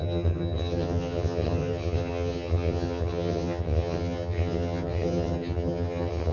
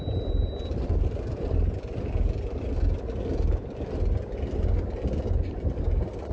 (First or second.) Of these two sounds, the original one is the second